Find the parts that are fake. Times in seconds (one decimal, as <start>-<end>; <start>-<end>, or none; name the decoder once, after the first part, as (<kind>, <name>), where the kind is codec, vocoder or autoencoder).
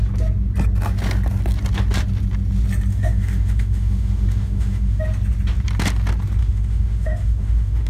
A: 2.9-5.0 (autoencoder, DAC-VAE); 6.4-7.9